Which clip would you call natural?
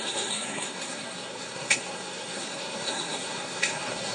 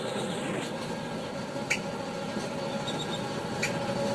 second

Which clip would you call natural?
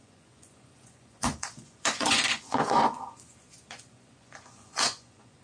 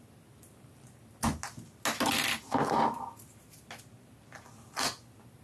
second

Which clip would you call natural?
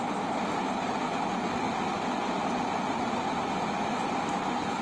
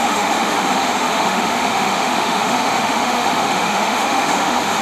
first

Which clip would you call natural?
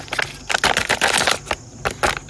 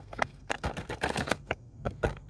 first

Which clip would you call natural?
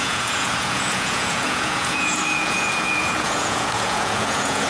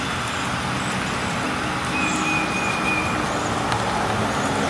second